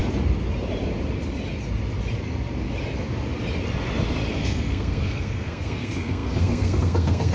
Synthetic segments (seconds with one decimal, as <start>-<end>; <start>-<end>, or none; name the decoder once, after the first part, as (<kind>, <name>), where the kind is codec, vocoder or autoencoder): 4.3-7.3 (codec, SNAC)